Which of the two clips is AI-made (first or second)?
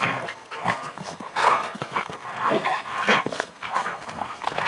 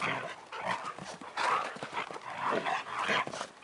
first